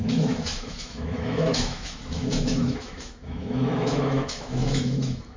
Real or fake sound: fake